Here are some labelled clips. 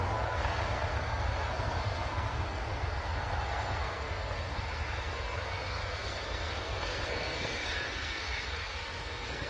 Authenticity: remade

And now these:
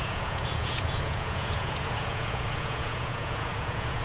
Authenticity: remade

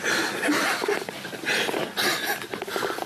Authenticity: recorded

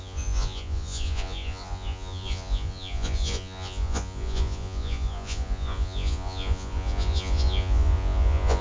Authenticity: remade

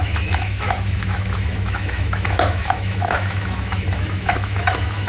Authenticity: remade